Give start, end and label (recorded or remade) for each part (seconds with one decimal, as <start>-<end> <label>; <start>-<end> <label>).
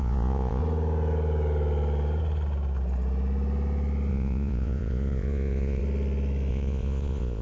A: 0.0-0.6 remade; 0.6-4.1 recorded; 4.1-5.8 remade; 5.8-6.5 recorded; 6.5-7.4 remade